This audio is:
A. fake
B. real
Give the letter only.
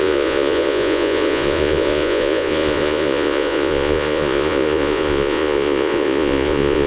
A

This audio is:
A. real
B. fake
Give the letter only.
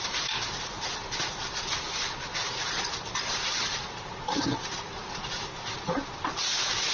A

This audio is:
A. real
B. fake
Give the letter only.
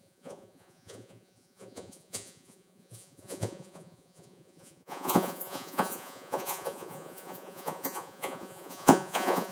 B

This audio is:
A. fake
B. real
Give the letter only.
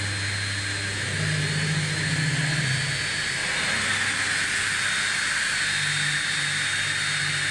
B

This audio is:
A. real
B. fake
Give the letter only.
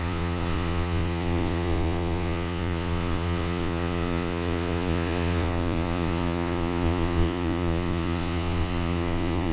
B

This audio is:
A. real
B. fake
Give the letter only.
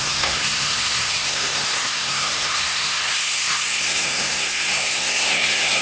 B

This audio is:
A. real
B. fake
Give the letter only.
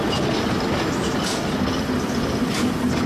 A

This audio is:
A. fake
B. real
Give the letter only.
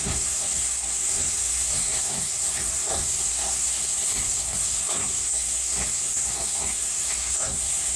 A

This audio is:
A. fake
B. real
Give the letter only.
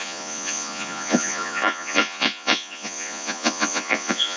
A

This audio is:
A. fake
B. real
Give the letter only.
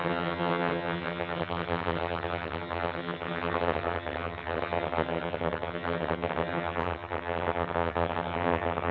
A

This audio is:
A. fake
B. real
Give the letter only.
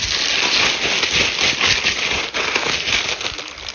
B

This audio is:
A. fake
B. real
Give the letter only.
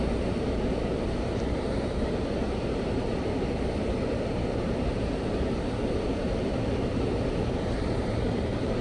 A